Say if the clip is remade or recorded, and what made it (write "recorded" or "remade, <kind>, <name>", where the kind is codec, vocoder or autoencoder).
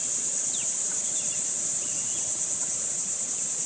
remade, vocoder, BigVGAN v2